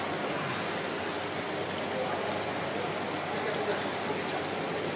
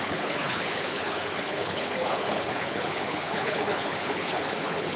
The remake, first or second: second